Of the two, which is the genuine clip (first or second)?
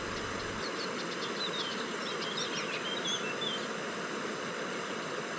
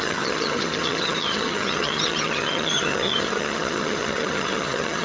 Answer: first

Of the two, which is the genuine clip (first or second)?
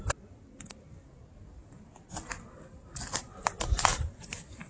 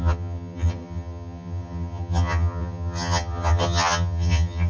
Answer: first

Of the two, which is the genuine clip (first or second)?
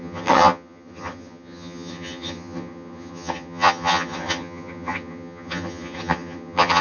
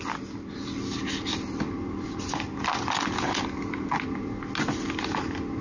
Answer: second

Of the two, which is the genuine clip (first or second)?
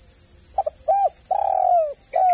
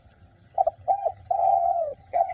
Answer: first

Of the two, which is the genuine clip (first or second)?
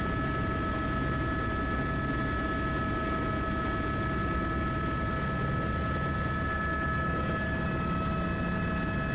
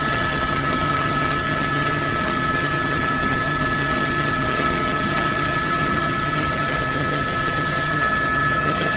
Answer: first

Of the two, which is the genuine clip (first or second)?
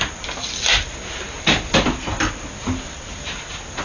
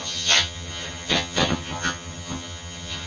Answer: first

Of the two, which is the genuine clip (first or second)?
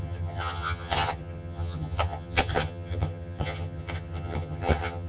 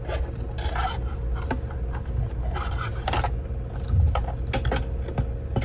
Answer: second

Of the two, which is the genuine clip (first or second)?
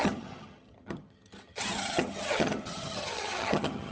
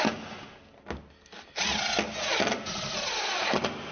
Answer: second